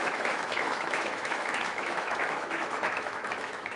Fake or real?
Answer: fake